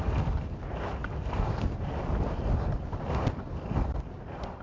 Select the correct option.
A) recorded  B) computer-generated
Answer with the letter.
A